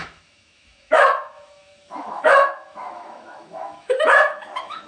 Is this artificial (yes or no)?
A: yes